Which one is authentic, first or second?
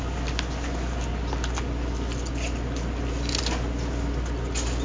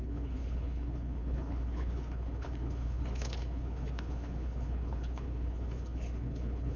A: first